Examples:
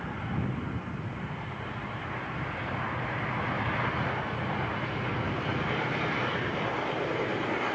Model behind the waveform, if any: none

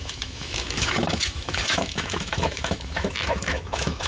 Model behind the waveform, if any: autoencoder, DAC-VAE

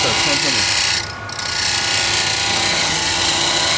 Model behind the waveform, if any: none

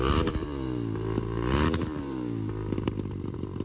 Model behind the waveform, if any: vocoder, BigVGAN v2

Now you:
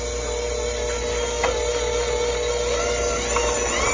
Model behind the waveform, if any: none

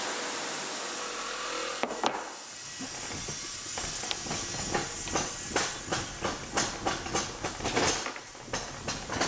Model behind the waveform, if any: none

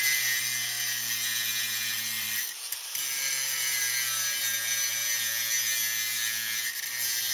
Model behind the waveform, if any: none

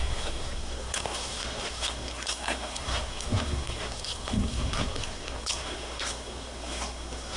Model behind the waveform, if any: codec, SNAC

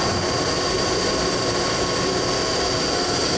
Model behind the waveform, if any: none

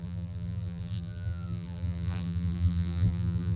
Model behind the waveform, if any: vocoder, BigVGAN v2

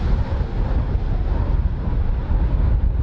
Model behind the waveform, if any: none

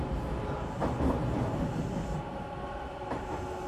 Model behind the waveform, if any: none